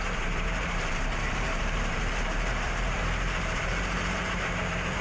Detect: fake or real fake